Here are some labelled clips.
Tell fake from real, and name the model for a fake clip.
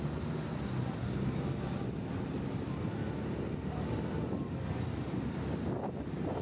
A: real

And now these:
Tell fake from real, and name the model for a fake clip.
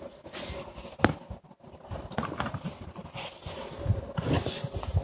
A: real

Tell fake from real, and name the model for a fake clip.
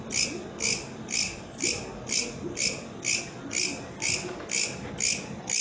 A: real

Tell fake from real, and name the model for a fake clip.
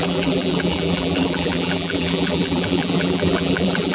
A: fake, vocoder, BigVGAN v2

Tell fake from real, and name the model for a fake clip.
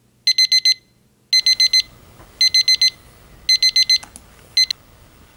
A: real